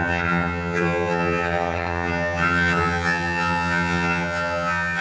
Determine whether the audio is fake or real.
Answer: fake